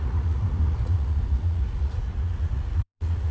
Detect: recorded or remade remade